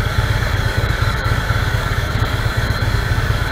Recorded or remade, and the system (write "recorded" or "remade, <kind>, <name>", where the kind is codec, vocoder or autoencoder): remade, codec, DAC